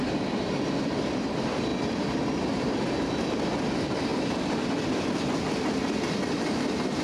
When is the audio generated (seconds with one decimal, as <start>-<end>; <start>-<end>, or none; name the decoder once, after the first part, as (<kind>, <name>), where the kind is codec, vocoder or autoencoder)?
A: none